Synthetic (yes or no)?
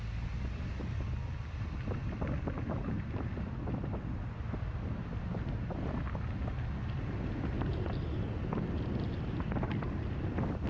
no